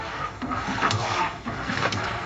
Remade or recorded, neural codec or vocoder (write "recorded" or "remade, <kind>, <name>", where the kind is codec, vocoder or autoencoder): remade, codec, SNAC